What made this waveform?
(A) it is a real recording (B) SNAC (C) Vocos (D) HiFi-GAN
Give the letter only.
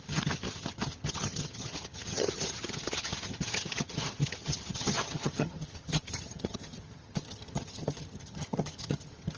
D